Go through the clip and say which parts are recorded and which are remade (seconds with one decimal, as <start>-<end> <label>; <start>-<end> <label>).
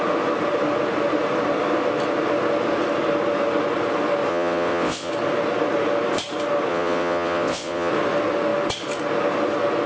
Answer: 0.0-4.3 recorded; 4.3-5.1 remade; 5.1-6.7 recorded; 6.7-7.9 remade; 7.9-9.9 recorded